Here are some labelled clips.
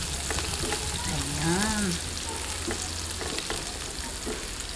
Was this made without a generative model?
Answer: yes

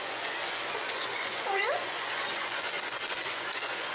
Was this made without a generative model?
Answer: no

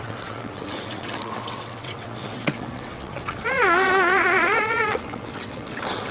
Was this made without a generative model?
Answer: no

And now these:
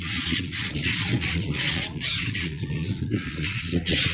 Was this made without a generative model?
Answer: no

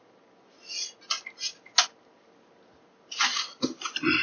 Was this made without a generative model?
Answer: yes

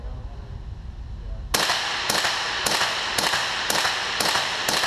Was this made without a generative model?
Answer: yes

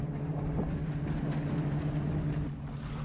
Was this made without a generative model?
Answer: yes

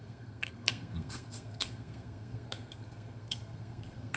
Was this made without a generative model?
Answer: no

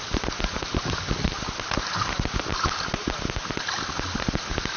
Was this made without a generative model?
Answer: yes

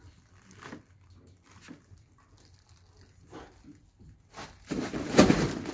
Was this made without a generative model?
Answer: yes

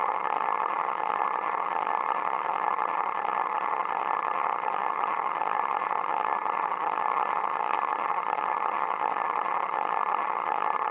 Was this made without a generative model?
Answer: no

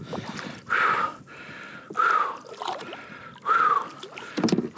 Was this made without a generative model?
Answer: yes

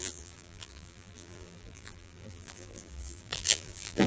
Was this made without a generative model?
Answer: no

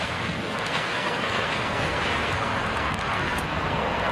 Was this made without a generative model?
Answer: no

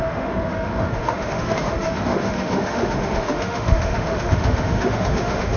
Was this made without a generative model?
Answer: no